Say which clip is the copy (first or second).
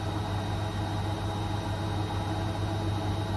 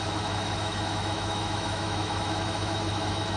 second